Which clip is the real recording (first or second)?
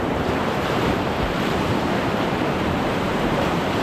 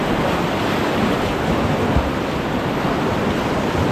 second